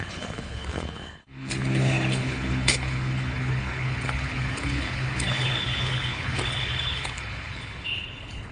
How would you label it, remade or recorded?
remade